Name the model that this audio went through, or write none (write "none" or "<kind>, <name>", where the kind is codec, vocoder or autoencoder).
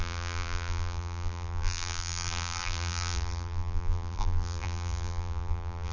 vocoder, BigVGAN v2